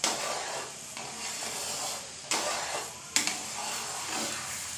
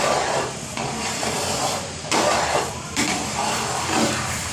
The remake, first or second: second